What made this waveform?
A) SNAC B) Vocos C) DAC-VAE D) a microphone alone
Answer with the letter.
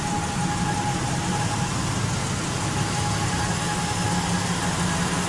D